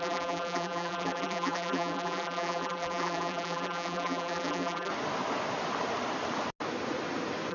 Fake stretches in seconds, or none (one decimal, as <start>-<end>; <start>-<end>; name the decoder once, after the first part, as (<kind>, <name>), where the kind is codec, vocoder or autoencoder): 0.0-4.9 (vocoder, BigVGAN v2)